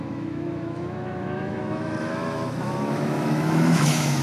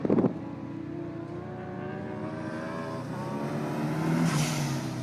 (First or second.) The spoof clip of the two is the first